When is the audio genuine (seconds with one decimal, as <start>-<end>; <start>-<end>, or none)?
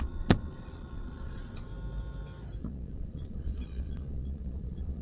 1.7-2.6